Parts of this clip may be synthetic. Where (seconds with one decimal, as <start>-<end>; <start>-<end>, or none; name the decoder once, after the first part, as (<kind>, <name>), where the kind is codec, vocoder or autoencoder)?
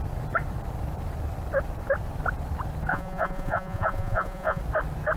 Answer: 2.9-4.6 (vocoder, Vocos)